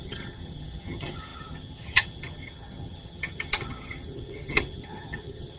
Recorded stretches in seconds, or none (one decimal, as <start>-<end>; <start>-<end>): none

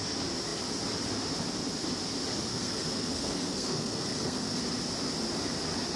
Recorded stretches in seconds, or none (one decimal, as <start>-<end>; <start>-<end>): 0.0-2.5; 4.6-6.0